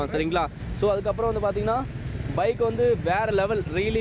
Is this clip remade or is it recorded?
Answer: recorded